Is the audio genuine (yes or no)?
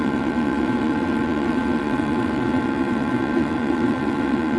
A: no